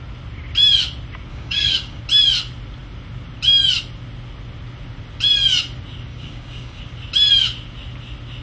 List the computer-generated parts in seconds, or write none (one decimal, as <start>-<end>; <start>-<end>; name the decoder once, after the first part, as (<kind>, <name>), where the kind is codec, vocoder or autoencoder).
1.3-2.0 (codec, DAC); 6.1-6.8